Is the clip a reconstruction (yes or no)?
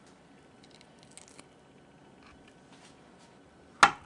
no